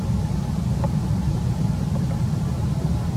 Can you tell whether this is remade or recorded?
recorded